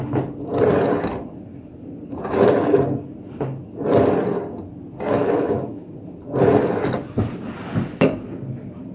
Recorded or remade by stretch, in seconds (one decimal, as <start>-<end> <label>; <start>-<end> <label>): 0.0-5.2 recorded; 5.2-5.9 remade; 5.9-8.9 recorded